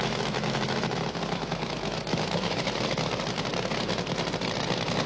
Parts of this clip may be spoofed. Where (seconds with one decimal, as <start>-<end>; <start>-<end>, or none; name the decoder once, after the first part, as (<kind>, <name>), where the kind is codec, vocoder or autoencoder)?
0.0-3.1 (autoencoder, DAC-VAE)